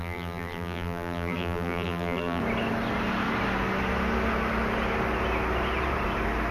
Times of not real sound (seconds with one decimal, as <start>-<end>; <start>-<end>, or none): 0.0-2.4